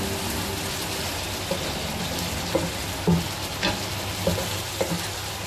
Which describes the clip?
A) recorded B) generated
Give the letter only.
A